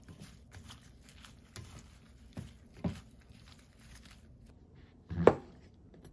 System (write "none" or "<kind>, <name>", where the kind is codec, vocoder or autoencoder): none